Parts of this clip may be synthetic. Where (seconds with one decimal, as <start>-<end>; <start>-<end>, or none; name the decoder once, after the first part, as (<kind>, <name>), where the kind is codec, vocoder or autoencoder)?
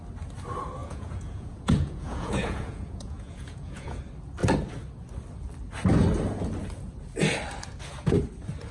0.8-4.0 (vocoder, Vocos)